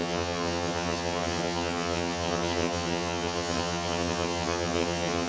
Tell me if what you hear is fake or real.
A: fake